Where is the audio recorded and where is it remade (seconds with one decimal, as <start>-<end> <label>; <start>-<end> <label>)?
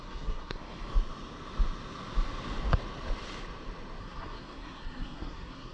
0.0-0.6 remade; 0.6-4.0 recorded; 4.0-5.7 remade